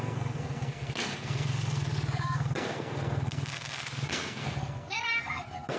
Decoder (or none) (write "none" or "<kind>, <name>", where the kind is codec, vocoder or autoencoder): codec, SNAC